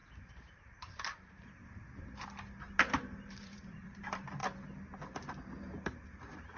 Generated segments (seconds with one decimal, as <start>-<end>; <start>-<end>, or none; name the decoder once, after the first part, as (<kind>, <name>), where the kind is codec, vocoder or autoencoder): 0.0-1.6 (vocoder, BigVGAN v2); 2.8-4.4; 5.6-6.6